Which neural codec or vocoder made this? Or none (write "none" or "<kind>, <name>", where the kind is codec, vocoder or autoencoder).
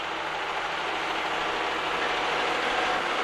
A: none